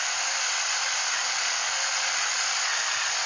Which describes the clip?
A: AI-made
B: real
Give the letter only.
B